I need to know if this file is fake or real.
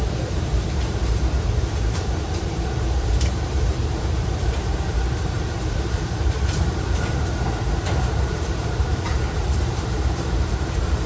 fake